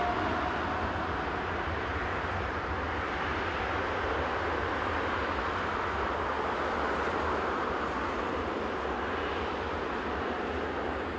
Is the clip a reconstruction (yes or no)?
no